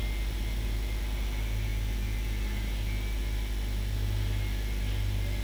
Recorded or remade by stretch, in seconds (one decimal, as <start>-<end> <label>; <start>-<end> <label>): 0.0-5.4 recorded